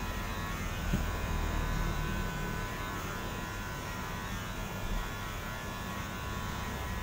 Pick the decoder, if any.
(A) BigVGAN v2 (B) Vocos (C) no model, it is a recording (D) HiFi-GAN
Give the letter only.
A